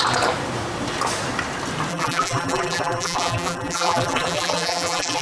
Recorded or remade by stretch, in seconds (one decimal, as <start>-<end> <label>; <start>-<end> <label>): 0.0-1.9 recorded; 1.9-5.2 remade